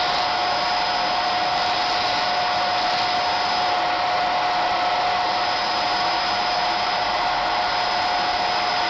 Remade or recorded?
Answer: recorded